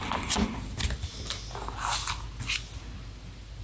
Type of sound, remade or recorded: recorded